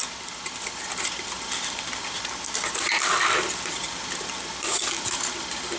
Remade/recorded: recorded